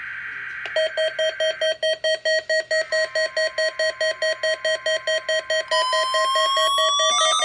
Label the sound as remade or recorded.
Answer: recorded